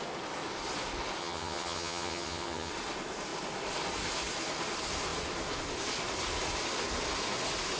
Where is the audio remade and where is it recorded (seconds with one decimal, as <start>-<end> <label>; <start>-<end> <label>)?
0.0-1.2 recorded; 1.2-2.7 remade; 2.7-7.8 recorded